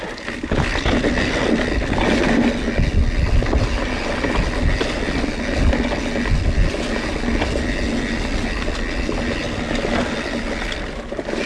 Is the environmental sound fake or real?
real